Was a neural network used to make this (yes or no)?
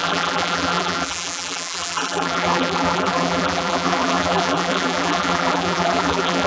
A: yes